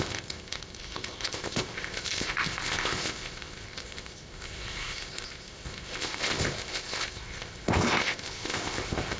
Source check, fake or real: fake